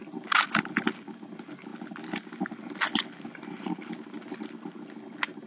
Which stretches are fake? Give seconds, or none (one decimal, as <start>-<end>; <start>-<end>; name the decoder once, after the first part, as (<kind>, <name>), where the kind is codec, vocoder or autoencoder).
none